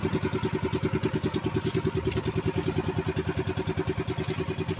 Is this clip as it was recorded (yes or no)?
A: yes